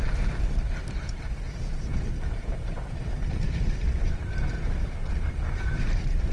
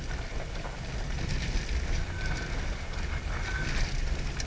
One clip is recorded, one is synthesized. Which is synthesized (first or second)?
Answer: first